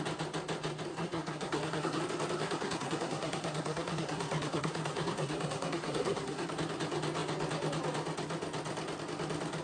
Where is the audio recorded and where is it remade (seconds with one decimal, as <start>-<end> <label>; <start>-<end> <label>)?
0.0-0.9 recorded; 0.9-2.0 remade; 2.0-2.4 recorded; 2.4-6.5 remade; 6.5-9.6 recorded